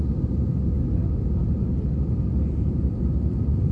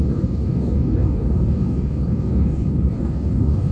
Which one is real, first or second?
first